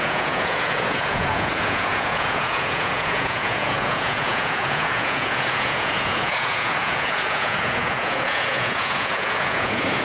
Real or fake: fake